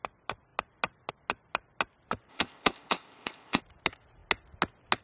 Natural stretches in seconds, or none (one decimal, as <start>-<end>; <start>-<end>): 0.0-2.3; 3.6-5.0

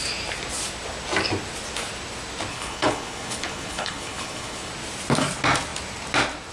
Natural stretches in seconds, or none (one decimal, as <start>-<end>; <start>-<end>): 0.0-2.5; 4.7-6.5

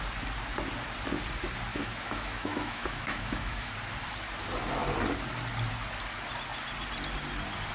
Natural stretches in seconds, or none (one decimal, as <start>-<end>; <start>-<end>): 0.0-1.7; 3.7-7.7

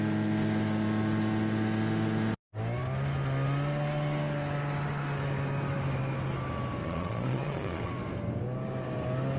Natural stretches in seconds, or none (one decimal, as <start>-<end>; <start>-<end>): 0.0-6.8; 7.9-9.4

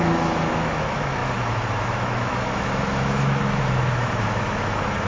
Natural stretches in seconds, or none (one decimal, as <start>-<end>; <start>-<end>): none

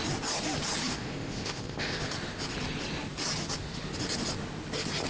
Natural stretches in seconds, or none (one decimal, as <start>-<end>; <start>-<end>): 0.0-0.9; 2.0-5.1

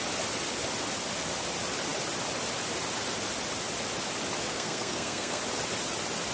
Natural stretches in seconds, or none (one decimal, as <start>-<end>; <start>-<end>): 0.0-4.5; 5.4-6.3